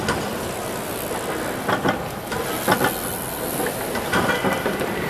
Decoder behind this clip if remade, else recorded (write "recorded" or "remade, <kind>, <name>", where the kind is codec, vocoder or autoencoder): recorded